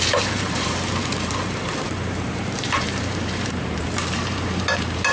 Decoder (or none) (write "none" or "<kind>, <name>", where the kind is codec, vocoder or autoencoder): vocoder, BigVGAN v2